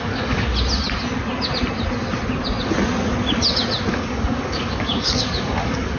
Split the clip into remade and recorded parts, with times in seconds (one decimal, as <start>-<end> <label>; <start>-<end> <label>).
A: 0.0-0.5 remade; 0.5-3.9 recorded; 3.9-6.0 remade